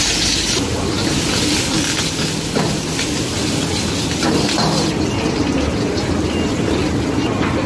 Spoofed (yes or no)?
no